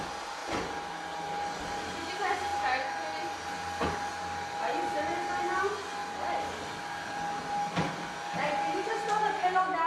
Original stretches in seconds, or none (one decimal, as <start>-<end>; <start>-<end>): 0.0-9.9